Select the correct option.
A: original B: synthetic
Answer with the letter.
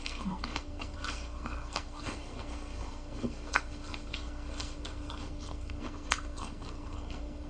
B